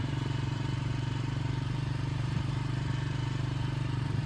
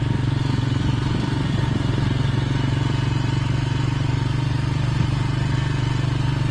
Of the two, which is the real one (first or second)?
second